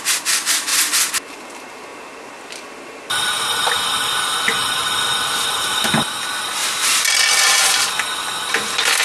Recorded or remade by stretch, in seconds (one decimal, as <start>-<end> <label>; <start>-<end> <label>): 0.0-6.6 recorded; 6.6-7.1 remade; 7.1-9.0 recorded